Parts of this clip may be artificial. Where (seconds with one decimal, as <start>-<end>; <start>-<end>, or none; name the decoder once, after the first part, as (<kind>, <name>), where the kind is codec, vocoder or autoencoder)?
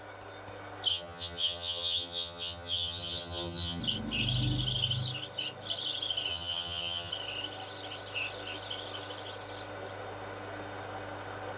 0.9-3.8 (vocoder, HiFi-GAN); 6.3-7.1